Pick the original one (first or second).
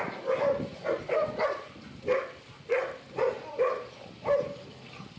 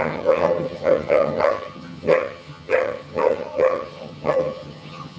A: first